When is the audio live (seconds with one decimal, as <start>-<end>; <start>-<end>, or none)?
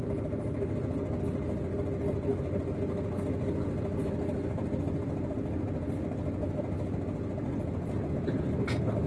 0.0-9.1